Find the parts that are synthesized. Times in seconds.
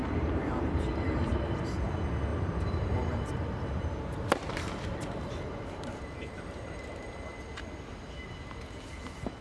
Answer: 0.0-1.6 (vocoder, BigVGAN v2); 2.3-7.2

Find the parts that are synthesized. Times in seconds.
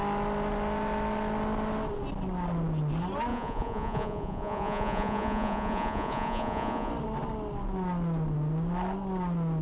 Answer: 3.3-6.9 (vocoder, Vocos)